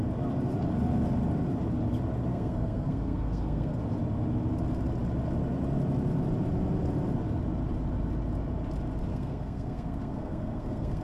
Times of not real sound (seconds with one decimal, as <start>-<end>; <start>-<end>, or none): 2.3-3.8; 9.1-11.0